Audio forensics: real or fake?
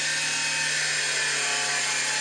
real